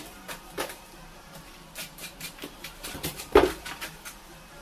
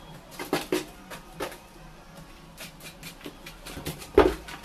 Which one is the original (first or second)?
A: second